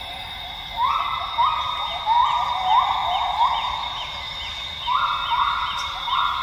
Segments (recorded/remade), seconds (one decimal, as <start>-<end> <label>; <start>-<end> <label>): 0.0-6.4 recorded